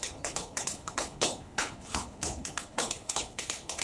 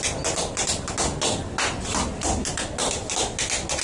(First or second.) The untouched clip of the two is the second